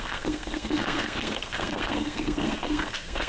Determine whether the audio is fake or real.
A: fake